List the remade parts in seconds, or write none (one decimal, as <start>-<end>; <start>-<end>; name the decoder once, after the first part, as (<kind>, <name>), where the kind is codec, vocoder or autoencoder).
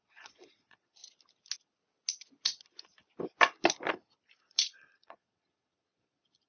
0.0-1.0 (vocoder, Vocos); 4.4-6.5